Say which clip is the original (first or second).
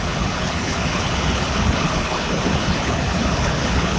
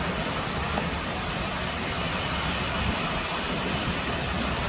second